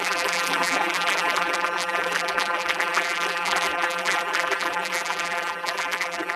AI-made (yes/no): yes